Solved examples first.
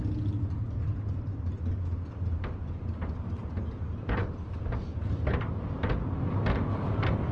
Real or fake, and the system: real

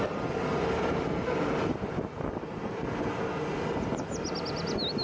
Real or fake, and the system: real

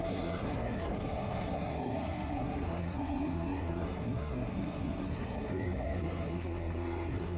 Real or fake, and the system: fake, codec, SNAC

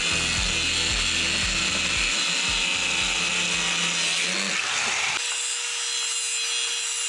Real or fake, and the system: real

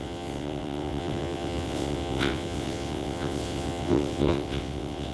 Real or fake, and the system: fake, vocoder, WaveNeXt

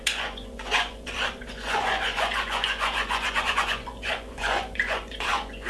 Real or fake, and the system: fake, vocoder, Vocos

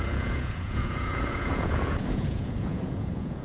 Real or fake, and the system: fake, vocoder, Vocos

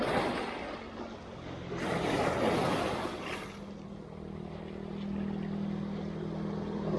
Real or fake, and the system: real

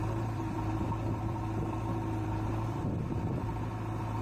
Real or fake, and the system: fake, vocoder, BigVGAN v2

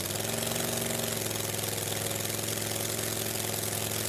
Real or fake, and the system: real